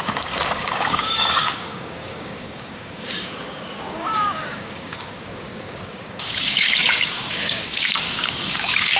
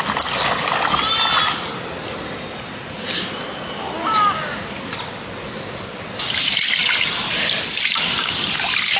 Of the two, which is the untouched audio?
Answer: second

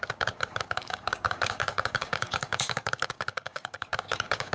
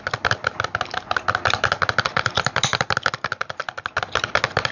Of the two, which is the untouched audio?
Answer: second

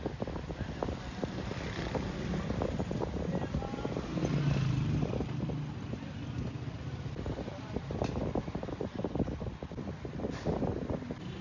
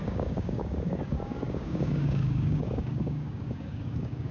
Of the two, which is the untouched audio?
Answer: first